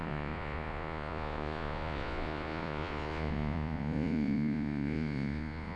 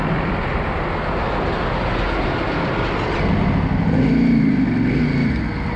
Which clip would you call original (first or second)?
second